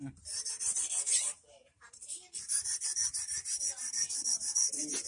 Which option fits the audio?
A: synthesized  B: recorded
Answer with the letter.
B